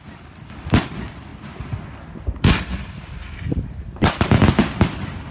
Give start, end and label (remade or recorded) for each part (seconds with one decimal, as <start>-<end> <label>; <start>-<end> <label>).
0.0-5.3 recorded